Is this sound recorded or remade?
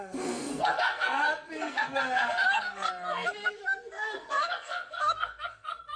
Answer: remade